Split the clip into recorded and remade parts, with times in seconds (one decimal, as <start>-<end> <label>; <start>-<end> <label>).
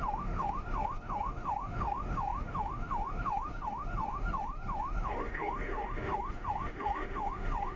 0.0-7.8 remade